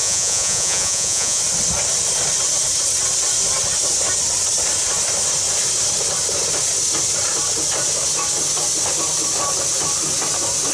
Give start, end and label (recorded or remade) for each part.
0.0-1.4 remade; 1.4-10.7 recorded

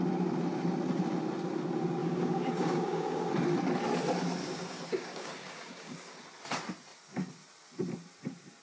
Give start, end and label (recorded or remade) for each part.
0.0-2.0 recorded; 2.0-3.3 remade; 3.3-4.4 recorded; 4.4-6.2 remade; 6.2-8.6 recorded